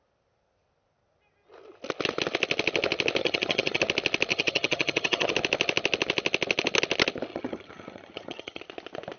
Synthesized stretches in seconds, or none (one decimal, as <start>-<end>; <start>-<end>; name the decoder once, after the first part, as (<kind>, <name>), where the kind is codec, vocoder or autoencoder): 3.2-3.8 (vocoder, HiFi-GAN); 4.3-5.3; 7.3-8.6